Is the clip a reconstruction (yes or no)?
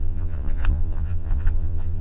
yes